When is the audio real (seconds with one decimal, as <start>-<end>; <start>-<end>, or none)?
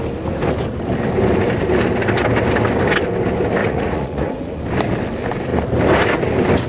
0.0-3.6; 4.6-6.7